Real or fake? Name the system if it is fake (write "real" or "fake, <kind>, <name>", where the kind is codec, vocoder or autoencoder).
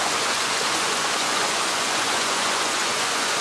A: fake, vocoder, Vocos